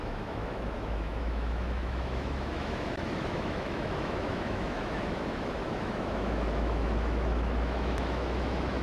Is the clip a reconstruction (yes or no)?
yes